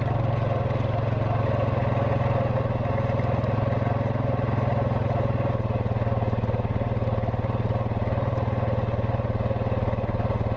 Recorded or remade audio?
recorded